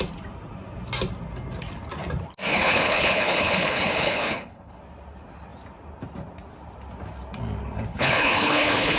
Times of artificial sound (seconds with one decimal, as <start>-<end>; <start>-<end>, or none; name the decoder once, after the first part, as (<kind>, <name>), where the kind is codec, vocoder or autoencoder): 2.5-4.8 (codec, HILCodec); 7.9-9.0